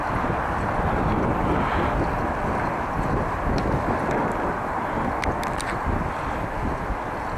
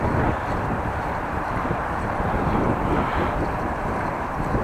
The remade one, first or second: second